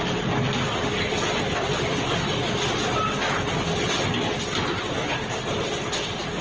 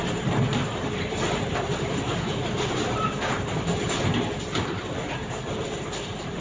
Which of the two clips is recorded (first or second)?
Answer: first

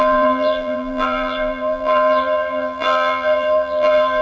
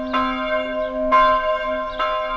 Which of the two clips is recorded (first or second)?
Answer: second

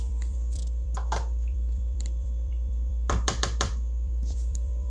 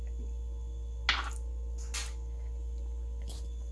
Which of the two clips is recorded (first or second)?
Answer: second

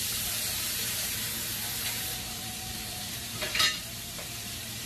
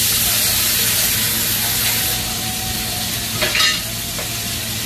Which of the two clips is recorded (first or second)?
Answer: second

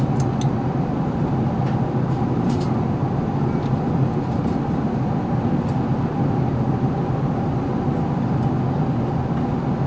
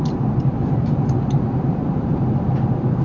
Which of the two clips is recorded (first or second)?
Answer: first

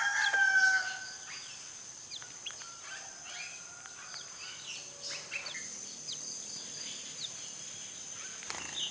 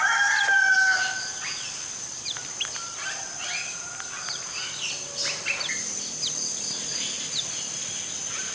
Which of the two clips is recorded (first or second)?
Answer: first